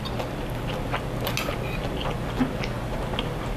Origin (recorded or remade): recorded